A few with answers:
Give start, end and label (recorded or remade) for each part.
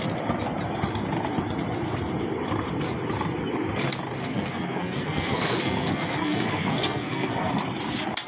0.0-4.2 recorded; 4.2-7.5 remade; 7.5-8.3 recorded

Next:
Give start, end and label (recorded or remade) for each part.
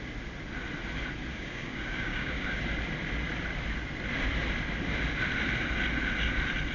0.0-1.3 recorded; 1.3-2.6 remade; 2.6-6.7 recorded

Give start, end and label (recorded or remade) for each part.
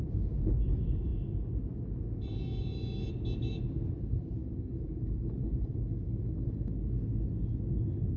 0.0-4.4 recorded; 4.4-6.8 remade; 6.8-8.2 recorded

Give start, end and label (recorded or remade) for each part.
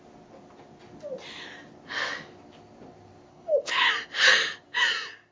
0.0-3.3 recorded; 3.3-3.9 remade; 3.9-5.3 recorded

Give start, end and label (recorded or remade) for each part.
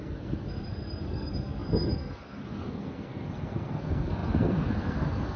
0.0-5.4 remade